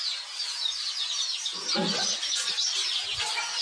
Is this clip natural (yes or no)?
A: yes